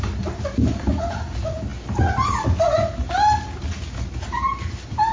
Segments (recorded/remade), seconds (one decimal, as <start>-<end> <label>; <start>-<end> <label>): 0.0-5.1 recorded